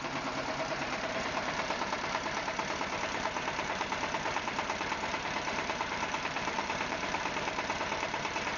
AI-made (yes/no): yes